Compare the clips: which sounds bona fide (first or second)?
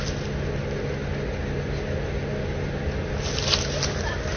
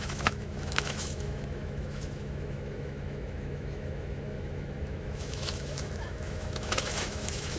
first